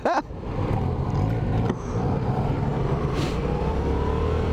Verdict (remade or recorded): remade